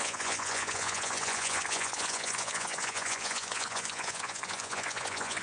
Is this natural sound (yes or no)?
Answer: no